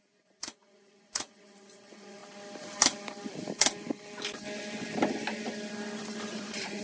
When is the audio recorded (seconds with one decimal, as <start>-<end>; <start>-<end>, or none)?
2.2-6.3

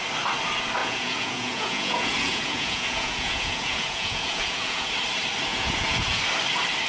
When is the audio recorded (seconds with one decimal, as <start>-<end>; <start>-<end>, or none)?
0.0-0.8; 4.9-5.5; 6.2-6.9